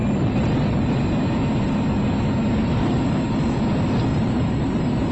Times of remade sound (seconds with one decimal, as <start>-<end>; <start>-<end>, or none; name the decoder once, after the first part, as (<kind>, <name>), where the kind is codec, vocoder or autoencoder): 0.0-1.0 (vocoder, BigVGAN v2); 2.6-3.6; 4.1-5.1